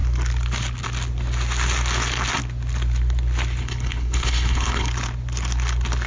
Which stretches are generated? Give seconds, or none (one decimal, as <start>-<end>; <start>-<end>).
3.6-4.9